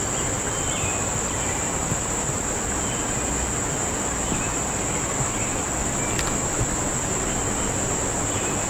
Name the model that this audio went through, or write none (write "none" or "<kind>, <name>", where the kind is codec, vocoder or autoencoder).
none